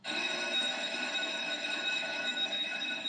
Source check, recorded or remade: remade